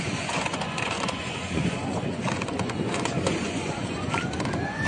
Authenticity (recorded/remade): remade